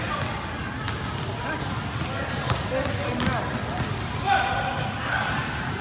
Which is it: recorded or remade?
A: recorded